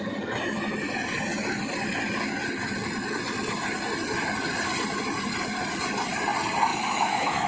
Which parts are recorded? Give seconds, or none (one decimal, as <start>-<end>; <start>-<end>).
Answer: 0.0-6.7